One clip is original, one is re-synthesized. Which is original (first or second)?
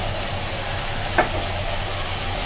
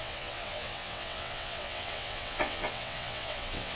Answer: first